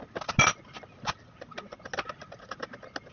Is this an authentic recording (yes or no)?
yes